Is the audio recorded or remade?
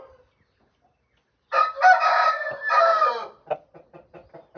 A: recorded